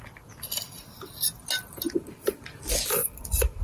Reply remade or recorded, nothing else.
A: recorded